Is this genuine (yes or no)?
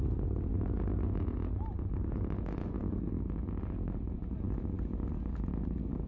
yes